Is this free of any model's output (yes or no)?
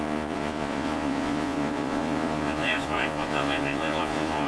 no